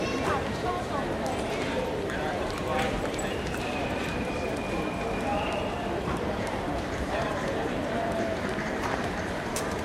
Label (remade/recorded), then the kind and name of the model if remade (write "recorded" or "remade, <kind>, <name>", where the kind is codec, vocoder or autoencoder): remade, vocoder, BigVGAN v2